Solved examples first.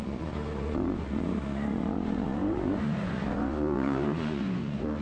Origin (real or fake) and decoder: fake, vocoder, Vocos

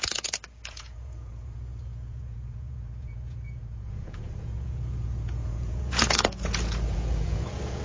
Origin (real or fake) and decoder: fake, vocoder, Vocos